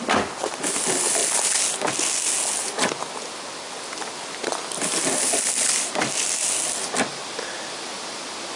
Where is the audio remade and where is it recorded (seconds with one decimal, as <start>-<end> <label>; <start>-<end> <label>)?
0.0-8.6 recorded